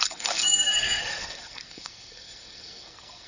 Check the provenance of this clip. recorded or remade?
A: remade